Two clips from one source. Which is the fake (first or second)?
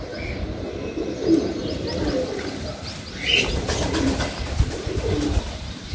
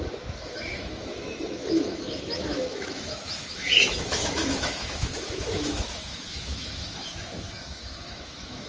second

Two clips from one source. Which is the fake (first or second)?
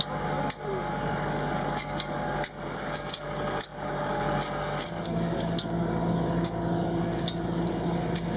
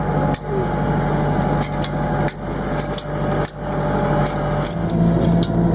first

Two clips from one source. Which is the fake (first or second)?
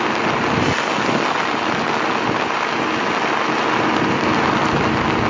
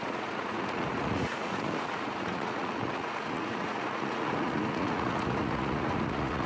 second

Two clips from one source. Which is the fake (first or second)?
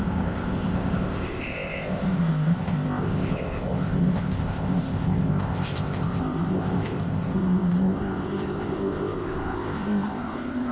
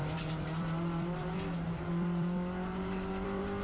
first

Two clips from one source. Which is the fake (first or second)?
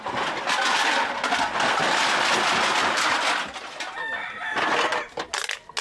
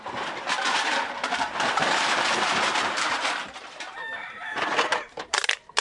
second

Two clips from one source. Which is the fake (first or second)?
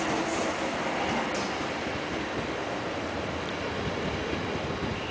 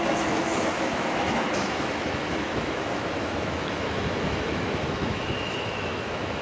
second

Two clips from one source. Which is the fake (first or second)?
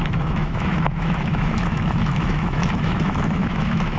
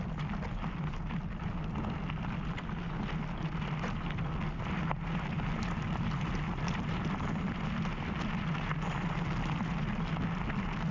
first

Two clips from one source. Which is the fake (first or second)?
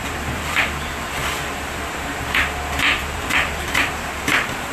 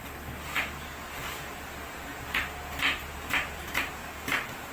first